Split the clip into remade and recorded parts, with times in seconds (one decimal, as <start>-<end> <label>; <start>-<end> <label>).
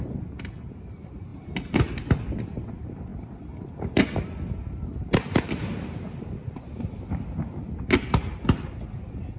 0.0-9.4 recorded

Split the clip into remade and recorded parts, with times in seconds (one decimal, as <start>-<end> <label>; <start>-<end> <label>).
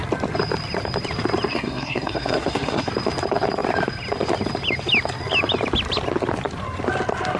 0.0-1.5 recorded; 1.5-2.9 remade; 2.9-7.4 recorded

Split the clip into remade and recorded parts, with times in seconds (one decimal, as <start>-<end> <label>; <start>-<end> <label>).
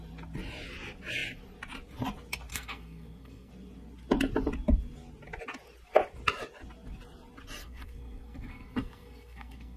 0.0-2.5 recorded; 2.5-3.5 remade; 3.5-7.6 recorded; 7.6-9.8 remade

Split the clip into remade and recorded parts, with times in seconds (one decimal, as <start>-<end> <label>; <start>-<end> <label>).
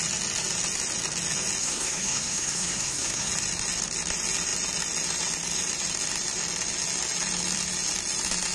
0.0-1.6 recorded; 1.6-3.3 remade; 3.3-8.5 recorded